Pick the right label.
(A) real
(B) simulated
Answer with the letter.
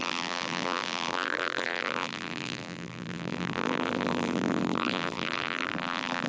B